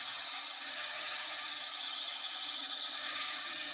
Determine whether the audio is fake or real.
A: fake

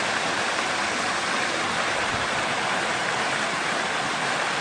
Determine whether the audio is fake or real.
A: fake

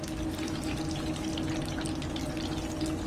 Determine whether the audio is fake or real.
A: real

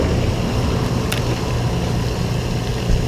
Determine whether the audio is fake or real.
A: real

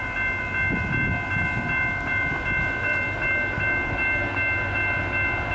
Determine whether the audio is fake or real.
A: real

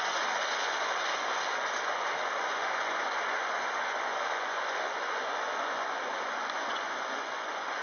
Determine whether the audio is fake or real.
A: fake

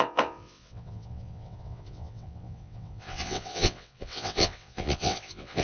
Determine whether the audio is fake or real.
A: fake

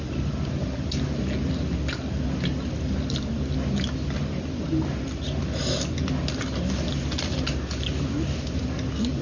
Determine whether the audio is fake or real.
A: real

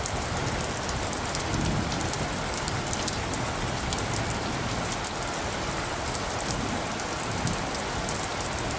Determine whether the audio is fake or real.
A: real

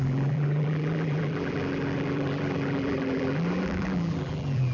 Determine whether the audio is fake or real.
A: fake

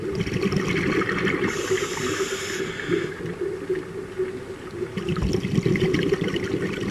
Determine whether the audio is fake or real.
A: real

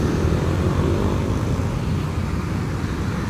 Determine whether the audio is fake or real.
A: real